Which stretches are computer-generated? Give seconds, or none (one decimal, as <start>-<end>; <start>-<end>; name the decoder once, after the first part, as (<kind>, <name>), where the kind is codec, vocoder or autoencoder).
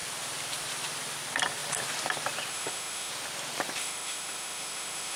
2.5-3.1 (autoencoder, DAC-VAE); 3.8-5.2